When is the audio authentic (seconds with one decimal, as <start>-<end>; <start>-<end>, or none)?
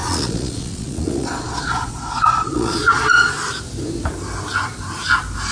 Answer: 3.3-5.5